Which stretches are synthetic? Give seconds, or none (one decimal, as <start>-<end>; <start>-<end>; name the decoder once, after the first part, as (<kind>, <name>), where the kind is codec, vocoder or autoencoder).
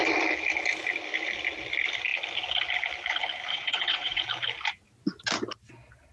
3.5-4.2 (vocoder, WaveNeXt)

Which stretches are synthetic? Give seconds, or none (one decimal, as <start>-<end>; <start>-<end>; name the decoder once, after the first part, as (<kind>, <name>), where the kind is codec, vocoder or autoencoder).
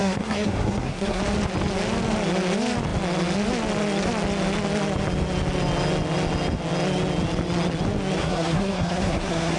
0.0-1.2 (codec, SNAC); 8.2-9.6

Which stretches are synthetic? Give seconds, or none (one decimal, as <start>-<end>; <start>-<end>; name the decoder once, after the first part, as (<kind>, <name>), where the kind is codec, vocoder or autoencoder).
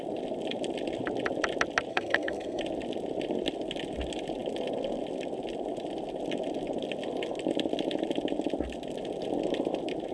1.9-2.6 (codec, SNAC)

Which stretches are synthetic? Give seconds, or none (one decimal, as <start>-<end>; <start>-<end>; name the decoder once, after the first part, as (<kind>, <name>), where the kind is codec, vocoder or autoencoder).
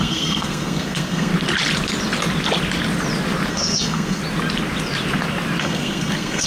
0.0-1.3 (codec, SNAC); 3.5-4.2; 5.6-6.5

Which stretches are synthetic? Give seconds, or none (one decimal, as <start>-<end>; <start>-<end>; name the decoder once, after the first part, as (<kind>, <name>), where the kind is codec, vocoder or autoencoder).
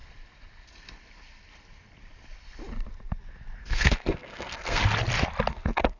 3.6-4.8 (codec, SNAC); 5.5-6.0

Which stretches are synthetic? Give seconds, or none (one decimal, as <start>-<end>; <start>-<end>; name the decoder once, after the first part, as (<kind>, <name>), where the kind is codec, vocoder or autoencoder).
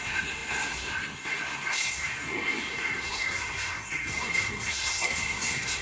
0.0-5.8 (codec, SNAC)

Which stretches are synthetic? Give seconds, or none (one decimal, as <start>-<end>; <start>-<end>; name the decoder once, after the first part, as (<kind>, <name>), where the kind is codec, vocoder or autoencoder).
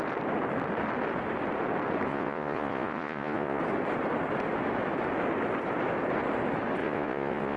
2.1-3.6 (vocoder, Vocos); 6.8-7.6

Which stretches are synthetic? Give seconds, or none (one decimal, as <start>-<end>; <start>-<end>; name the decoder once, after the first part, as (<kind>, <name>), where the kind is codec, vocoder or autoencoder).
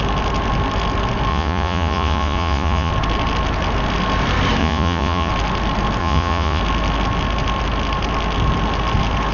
1.3-2.9 (vocoder, Vocos); 4.6-5.3; 6.0-6.6